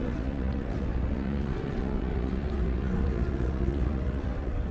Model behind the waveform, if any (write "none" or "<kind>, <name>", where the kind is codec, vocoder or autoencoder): vocoder, WaveNeXt